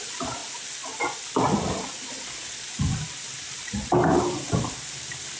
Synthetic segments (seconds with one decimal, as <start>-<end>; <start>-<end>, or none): none